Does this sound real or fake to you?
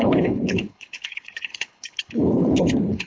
fake